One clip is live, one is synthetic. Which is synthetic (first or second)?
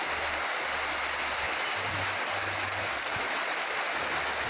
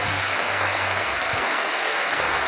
second